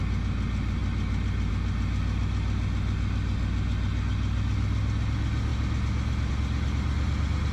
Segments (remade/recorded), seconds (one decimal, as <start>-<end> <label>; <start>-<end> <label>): 0.0-7.5 recorded